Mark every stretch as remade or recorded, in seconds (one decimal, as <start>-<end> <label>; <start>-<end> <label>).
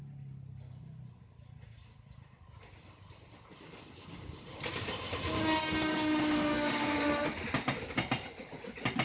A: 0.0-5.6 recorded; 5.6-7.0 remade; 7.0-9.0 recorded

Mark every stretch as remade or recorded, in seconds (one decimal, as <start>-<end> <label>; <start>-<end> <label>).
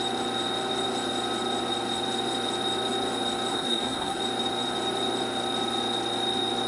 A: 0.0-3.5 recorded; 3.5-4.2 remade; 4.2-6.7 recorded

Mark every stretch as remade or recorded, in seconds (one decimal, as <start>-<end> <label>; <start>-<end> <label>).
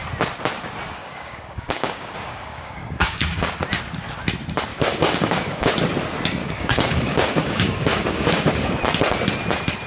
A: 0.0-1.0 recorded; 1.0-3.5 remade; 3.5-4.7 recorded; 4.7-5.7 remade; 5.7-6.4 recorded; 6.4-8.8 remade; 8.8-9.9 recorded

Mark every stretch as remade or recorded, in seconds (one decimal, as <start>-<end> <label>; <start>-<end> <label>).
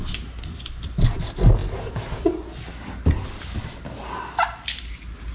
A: 0.0-5.3 recorded